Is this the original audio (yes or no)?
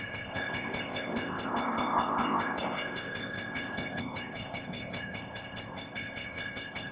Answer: no